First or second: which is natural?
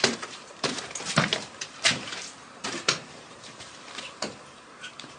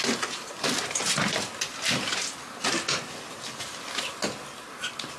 second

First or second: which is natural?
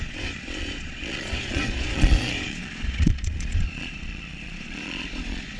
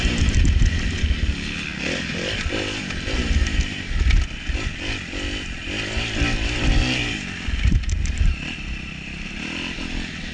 second